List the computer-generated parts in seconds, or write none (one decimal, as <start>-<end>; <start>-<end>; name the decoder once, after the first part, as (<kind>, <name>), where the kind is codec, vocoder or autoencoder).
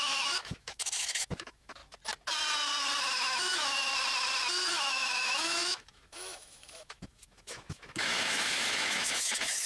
0.0-1.8 (autoencoder, DAC-VAE); 3.0-3.9; 4.7-9.7